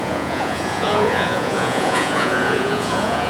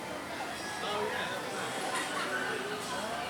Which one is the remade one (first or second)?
first